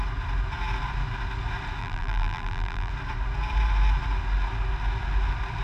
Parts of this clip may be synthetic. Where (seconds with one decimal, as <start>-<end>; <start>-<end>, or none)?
1.8-2.9